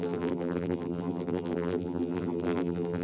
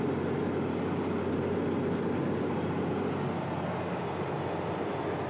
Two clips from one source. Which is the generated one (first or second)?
first